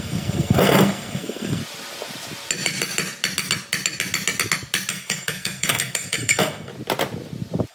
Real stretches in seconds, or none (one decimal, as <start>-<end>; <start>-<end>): 1.6-4.9; 6.7-7.7